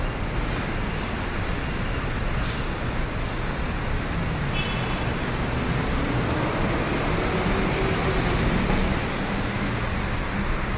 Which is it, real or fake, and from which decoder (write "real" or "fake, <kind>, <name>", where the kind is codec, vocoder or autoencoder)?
real